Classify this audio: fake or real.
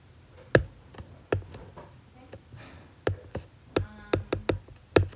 real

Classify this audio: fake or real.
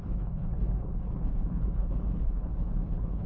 fake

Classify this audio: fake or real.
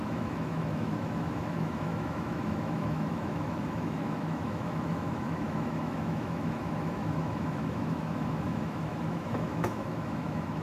fake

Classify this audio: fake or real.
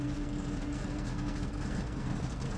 fake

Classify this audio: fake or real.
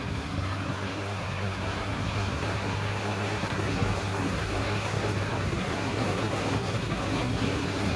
fake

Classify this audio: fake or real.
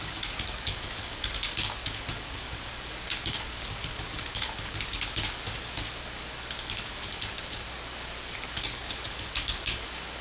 fake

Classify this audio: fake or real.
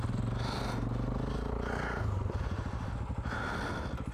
real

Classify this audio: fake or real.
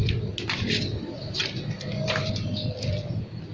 real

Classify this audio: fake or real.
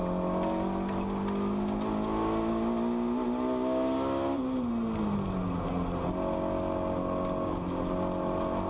real